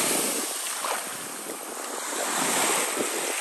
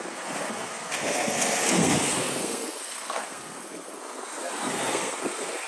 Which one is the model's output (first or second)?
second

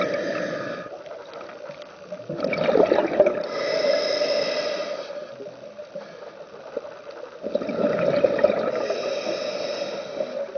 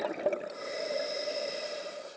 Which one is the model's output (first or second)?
second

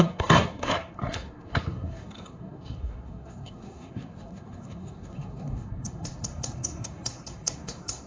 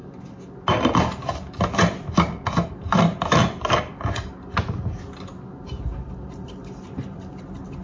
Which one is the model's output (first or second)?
first